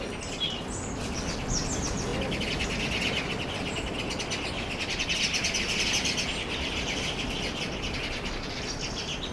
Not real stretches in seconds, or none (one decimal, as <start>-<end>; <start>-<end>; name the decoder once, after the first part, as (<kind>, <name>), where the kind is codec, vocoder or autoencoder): none